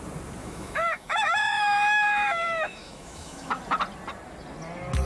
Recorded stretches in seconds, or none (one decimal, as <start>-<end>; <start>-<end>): 0.0-0.4; 3.5-5.1